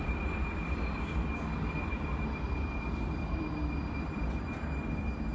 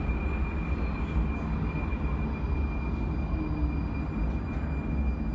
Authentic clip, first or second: second